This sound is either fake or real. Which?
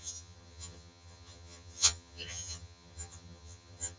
fake